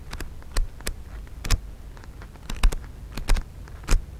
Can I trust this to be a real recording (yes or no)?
yes